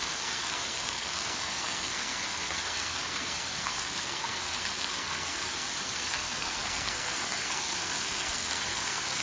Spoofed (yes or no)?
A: yes